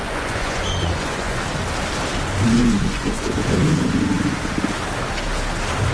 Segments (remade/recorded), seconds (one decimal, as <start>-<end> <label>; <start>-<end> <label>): 0.0-1.4 remade; 1.4-2.6 recorded; 2.6-4.0 remade; 4.0-5.9 recorded

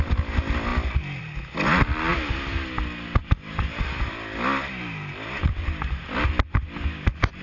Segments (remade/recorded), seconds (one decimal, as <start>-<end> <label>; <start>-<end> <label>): 0.0-7.4 recorded

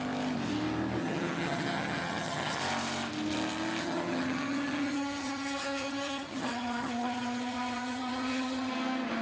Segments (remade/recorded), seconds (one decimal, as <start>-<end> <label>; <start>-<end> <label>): 0.0-1.0 recorded; 1.0-2.6 remade; 2.6-3.8 recorded; 3.8-8.7 remade; 8.7-9.2 recorded

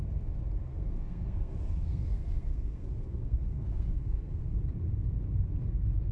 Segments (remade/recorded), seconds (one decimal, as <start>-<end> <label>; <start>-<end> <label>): 0.0-0.7 recorded; 0.7-4.4 remade; 4.4-6.1 recorded

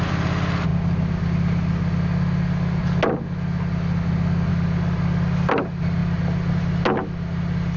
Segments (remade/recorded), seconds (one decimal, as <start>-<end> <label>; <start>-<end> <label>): 0.0-7.8 recorded

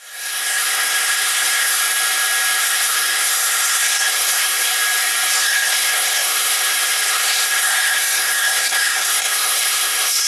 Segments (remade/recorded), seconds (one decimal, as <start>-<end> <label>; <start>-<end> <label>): 0.0-1.8 remade; 1.8-2.6 recorded; 2.6-4.7 remade; 4.7-5.4 recorded; 5.4-10.3 remade

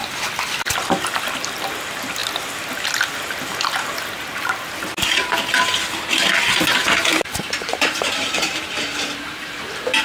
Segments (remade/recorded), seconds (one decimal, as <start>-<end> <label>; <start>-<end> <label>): 0.0-7.1 recorded; 7.1-8.6 remade; 8.6-10.0 recorded

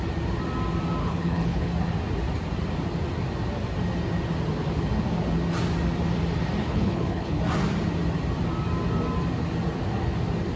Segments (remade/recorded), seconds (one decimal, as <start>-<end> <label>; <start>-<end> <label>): 0.0-1.0 recorded; 1.0-1.7 remade; 1.7-6.6 recorded; 6.6-7.4 remade; 7.4-10.6 recorded